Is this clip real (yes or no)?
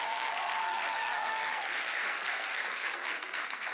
no